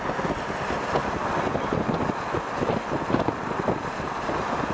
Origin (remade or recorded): recorded